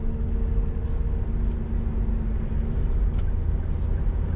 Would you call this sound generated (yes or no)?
no